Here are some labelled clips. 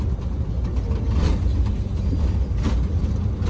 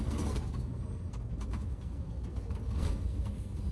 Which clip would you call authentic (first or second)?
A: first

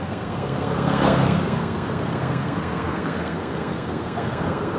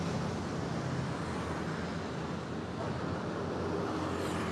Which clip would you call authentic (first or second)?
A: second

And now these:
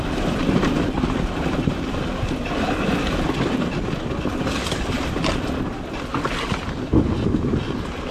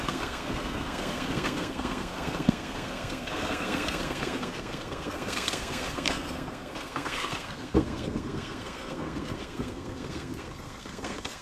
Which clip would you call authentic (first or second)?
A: first